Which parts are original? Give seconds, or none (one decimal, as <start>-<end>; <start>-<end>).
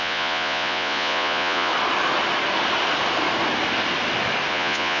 1.7-4.5